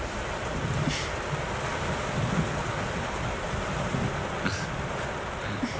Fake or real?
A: real